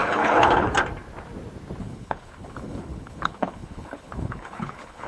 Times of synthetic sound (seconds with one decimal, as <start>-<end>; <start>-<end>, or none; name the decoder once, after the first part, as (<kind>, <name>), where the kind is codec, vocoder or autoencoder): 0.0-0.7 (codec, HILCodec); 1.8-5.1